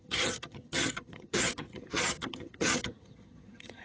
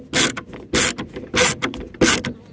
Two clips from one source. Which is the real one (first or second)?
second